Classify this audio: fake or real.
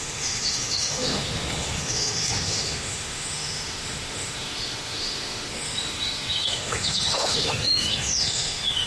fake